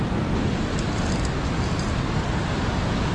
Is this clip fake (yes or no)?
no